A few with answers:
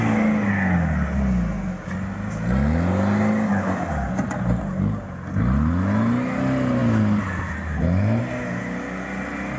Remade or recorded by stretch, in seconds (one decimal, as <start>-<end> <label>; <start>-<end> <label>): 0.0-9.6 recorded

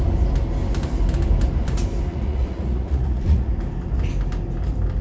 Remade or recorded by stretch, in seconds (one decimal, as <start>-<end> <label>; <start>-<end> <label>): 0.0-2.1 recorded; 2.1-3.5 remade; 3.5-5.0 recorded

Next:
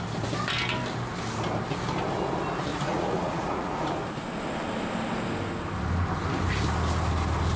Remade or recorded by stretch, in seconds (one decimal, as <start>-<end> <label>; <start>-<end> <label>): 0.0-2.7 recorded; 2.7-3.9 remade; 3.9-7.6 recorded

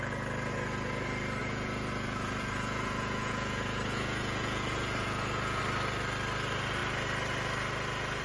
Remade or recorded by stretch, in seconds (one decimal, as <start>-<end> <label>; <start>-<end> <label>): 0.0-1.4 recorded; 1.4-5.6 remade; 5.6-8.2 recorded

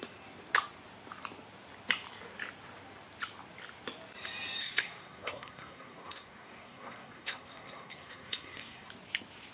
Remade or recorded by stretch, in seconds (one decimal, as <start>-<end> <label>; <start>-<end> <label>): 0.0-4.6 recorded; 4.6-8.9 remade; 8.9-9.5 recorded